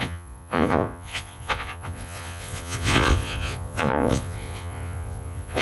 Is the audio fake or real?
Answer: fake